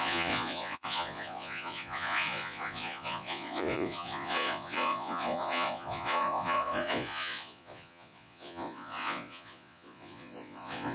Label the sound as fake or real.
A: fake